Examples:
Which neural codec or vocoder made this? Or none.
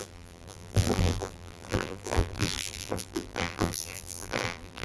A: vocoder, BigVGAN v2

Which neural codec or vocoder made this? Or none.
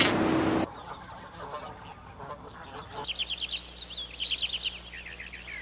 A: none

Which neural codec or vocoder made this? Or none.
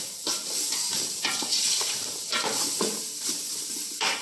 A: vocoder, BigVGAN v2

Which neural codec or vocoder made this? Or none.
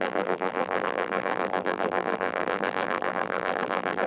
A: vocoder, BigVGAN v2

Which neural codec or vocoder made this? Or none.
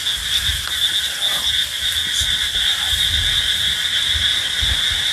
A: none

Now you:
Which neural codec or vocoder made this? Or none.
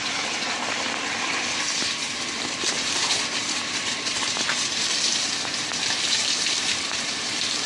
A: vocoder, BigVGAN v2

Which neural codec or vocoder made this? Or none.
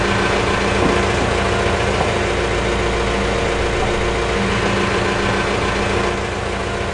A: none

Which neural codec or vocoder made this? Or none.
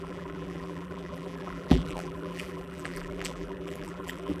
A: vocoder, BigVGAN v2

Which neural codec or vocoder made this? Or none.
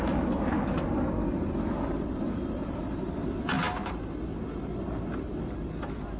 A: none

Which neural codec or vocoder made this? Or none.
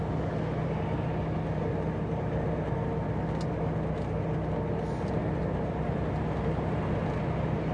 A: none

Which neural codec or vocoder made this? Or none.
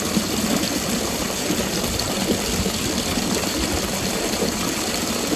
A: vocoder, BigVGAN v2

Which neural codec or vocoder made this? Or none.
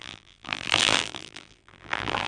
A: vocoder, BigVGAN v2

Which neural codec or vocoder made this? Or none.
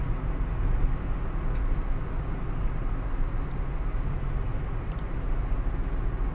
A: none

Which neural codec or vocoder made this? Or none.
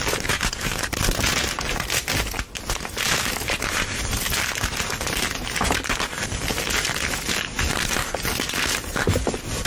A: vocoder, BigVGAN v2